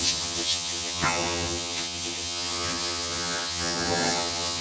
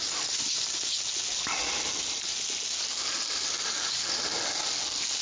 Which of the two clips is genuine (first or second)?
second